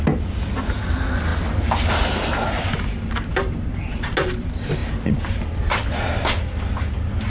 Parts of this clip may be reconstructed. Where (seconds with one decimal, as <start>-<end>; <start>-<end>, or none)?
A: none